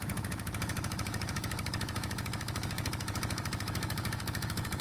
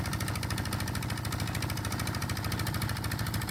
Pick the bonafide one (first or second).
second